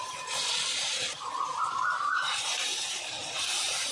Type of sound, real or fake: fake